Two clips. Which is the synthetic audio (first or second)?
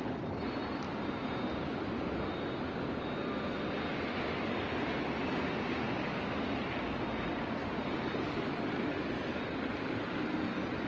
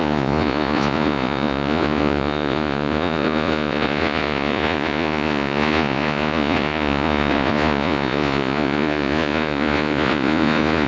second